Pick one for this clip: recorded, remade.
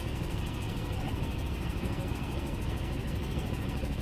remade